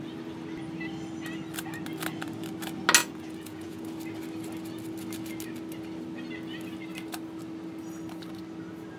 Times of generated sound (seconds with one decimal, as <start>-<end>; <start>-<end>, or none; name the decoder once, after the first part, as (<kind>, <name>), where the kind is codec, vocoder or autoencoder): 3.0-3.8 (vocoder, Vocos)